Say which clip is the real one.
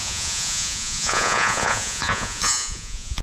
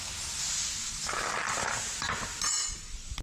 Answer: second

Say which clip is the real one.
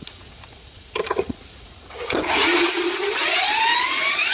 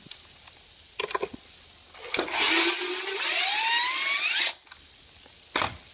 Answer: second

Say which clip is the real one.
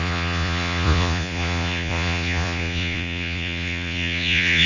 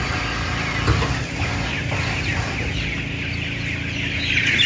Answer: second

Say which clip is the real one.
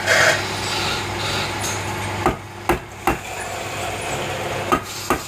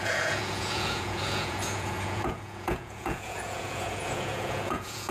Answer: first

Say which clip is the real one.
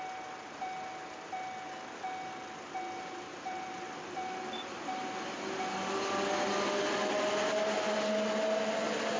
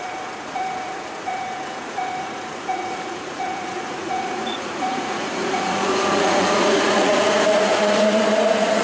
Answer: first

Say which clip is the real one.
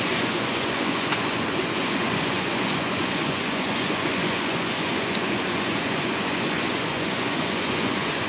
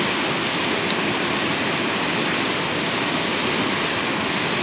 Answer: second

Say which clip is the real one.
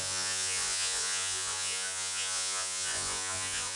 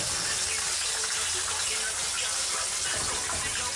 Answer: second